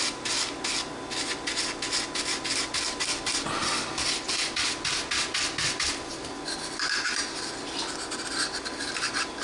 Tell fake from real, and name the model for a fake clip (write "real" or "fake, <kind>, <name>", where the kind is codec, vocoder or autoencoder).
real